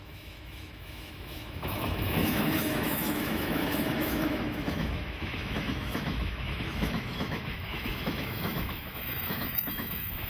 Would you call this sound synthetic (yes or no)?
yes